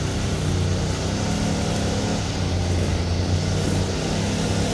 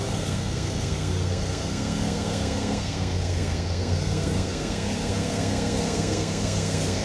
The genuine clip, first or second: first